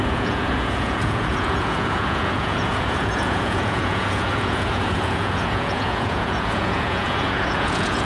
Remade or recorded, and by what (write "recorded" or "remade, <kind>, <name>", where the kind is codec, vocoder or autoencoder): remade, vocoder, Vocos